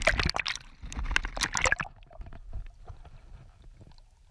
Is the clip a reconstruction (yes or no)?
no